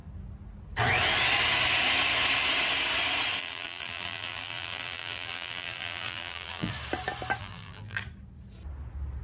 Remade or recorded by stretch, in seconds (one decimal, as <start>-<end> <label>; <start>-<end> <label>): 0.0-3.4 recorded; 3.4-6.7 remade; 6.7-7.4 recorded; 7.4-8.0 remade; 8.0-9.2 recorded